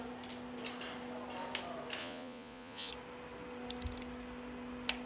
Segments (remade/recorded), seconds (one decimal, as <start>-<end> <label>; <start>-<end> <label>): 0.0-2.0 recorded; 2.0-2.9 remade; 2.9-5.1 recorded